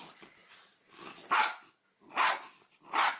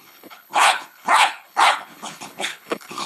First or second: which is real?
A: first